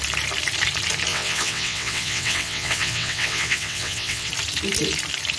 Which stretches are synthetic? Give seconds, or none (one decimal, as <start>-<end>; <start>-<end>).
1.1-4.3